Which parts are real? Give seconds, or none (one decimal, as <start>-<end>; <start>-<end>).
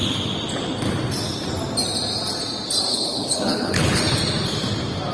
0.0-2.9; 4.0-5.1